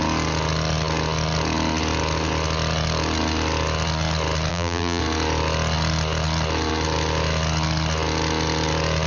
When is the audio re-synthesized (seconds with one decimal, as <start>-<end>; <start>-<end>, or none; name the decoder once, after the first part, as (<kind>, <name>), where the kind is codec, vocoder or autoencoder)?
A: 4.5-5.0 (vocoder, BigVGAN v2)